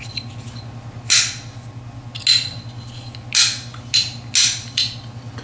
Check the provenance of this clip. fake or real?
real